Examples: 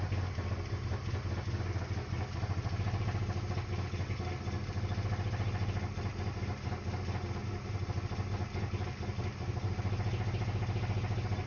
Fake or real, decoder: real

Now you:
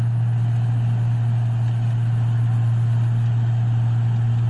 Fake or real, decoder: real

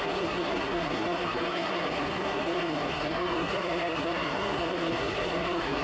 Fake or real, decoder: fake, codec, SNAC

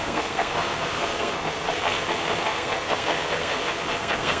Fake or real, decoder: fake, codec, SNAC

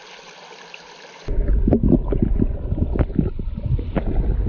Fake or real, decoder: real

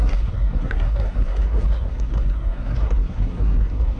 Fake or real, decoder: fake, codec, SNAC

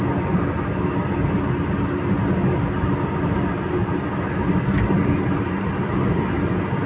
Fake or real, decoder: real